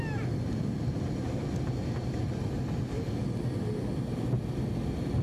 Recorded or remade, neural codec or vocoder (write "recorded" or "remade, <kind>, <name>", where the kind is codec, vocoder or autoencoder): recorded